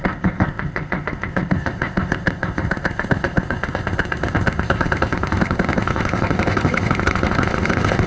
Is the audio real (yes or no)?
no